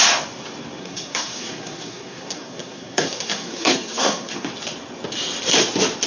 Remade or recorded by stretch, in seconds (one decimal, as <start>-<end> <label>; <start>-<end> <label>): 0.0-0.8 recorded; 0.8-4.5 remade; 4.5-6.1 recorded